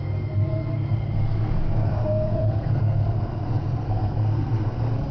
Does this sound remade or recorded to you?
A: remade